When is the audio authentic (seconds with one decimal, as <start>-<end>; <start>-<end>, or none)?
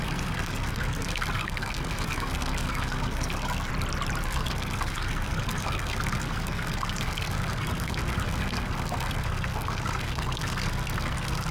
3.7-4.2